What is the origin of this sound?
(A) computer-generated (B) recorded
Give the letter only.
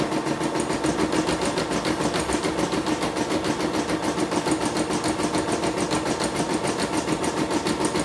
B